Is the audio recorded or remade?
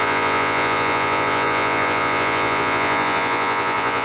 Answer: remade